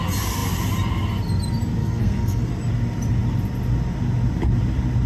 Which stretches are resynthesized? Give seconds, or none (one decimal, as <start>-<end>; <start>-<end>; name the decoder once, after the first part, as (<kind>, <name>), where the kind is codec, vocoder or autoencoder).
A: 1.8-2.5 (codec, SNAC)